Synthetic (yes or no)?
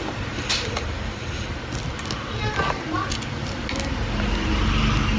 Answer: no